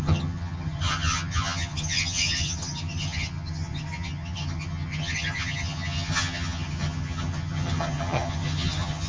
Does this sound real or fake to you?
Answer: fake